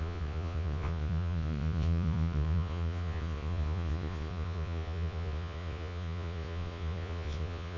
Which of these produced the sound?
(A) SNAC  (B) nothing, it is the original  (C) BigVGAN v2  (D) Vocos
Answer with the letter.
D